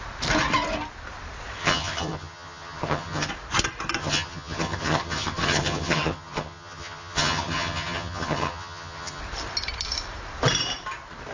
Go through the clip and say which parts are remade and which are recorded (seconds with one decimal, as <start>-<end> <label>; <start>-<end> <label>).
0.0-1.6 recorded; 1.6-3.3 remade; 3.3-4.0 recorded; 4.0-9.2 remade; 9.2-11.3 recorded